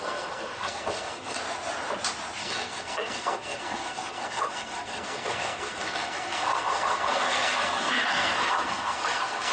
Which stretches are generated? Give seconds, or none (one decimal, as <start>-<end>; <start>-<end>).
0.0-1.4; 2.4-9.5